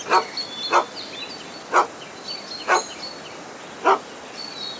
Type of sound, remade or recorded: recorded